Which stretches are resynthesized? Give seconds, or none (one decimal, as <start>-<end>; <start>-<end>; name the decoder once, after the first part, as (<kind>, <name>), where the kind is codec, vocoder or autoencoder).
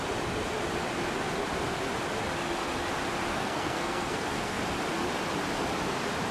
3.3-4.6 (codec, SNAC)